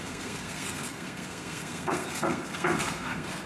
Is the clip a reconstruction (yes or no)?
yes